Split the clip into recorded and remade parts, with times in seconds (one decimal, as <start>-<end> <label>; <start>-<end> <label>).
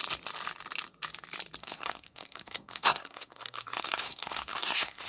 0.0-1.6 recorded; 1.6-5.1 remade